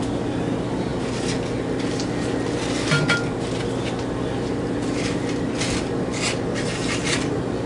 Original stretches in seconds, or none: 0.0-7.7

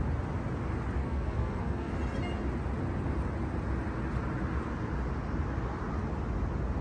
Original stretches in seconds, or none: 0.0-1.0; 1.9-6.8

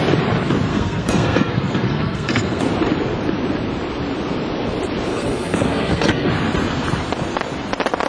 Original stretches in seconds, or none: 0.0-0.7; 2.6-5.1; 6.3-8.1

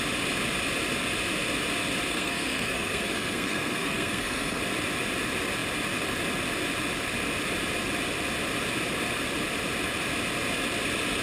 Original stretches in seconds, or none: 0.0-2.1; 4.6-11.2

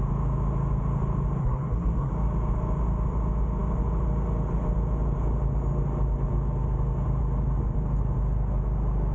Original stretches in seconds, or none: 0.0-1.4; 2.1-9.1

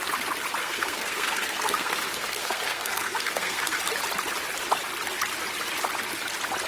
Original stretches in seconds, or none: 0.0-0.6; 3.8-6.7

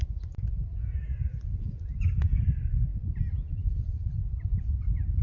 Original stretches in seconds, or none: 0.0-5.2

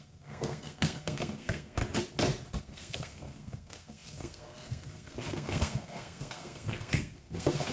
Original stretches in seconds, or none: 1.8-2.6